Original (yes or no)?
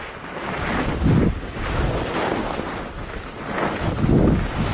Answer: yes